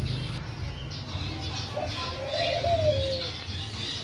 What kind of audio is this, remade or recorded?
recorded